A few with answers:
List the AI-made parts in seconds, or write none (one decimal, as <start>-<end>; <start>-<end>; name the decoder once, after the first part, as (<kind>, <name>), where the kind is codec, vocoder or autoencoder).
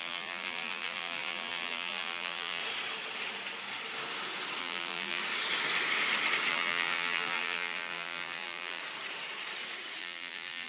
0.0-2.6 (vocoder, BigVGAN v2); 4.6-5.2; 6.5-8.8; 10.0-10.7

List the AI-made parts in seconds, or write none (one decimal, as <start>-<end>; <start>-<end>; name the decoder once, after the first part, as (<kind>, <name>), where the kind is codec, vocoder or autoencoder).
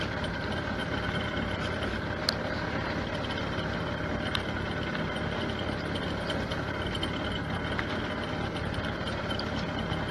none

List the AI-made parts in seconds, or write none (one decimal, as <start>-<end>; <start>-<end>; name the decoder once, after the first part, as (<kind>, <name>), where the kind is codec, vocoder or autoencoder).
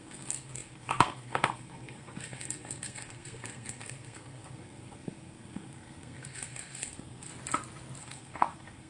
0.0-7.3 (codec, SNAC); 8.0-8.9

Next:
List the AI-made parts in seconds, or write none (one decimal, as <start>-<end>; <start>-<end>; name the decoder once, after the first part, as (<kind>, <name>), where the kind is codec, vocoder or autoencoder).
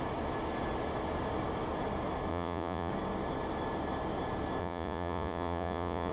2.3-2.9 (vocoder, Vocos); 4.6-6.1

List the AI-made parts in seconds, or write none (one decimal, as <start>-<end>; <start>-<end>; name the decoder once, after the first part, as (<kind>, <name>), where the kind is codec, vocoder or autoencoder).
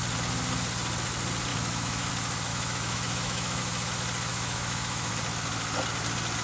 1.5-2.1 (autoencoder, DAC-VAE); 2.5-3.6; 4.3-5.1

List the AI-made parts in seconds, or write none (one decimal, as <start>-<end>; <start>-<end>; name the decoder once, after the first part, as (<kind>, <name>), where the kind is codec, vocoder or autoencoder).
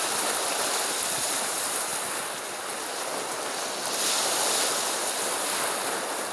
none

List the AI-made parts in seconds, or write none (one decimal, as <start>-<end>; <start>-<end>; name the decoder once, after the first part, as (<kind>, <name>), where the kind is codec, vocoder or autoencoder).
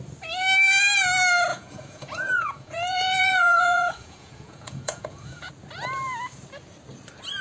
1.5-5.5 (vocoder, Vocos)